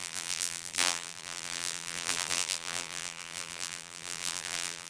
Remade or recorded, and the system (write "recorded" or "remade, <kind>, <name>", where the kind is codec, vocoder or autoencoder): remade, vocoder, BigVGAN v2